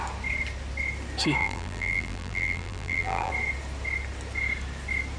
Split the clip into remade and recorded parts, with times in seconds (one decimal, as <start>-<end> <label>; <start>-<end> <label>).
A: 0.0-1.4 recorded; 1.4-3.3 remade; 3.3-5.2 recorded